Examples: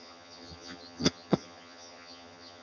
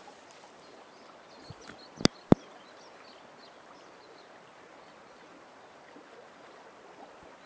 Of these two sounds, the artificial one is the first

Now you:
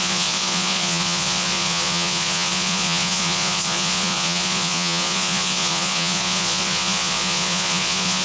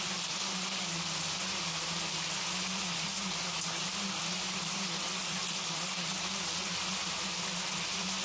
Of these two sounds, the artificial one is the first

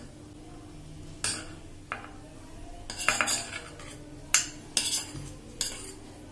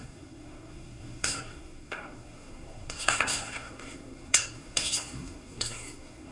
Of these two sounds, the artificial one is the second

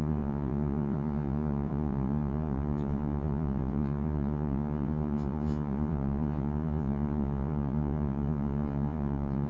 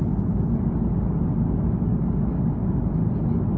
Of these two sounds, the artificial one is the first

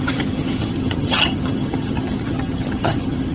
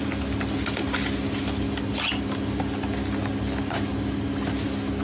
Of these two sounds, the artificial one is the first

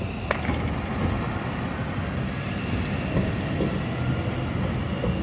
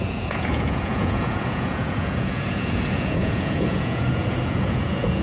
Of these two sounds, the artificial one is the second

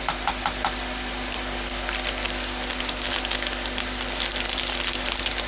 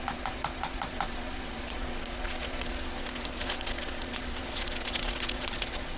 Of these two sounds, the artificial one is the second